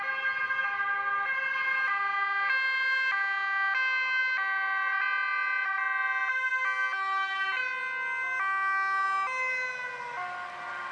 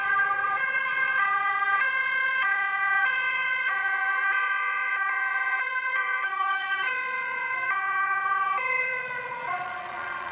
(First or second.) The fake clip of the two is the second